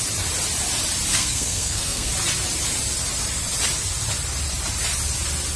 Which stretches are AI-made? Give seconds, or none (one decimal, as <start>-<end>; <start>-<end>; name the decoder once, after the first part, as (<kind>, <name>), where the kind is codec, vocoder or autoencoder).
1.1-2.1 (codec, SNAC)